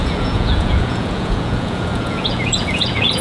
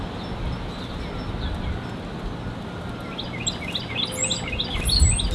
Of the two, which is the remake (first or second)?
first